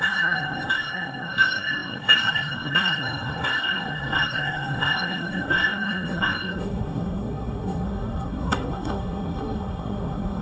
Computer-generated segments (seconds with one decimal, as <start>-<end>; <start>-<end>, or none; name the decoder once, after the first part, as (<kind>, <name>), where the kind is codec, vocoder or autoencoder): 0.0-10.4 (codec, SNAC)

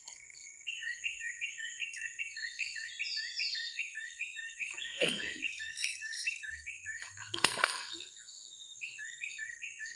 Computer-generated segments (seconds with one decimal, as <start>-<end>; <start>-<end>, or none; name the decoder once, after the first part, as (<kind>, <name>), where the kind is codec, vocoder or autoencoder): 0.0-2.9 (codec, SNAC); 3.5-10.0